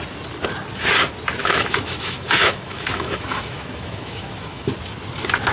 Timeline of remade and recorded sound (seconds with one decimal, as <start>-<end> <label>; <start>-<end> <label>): 0.0-1.4 recorded; 1.4-4.7 remade; 4.7-5.5 recorded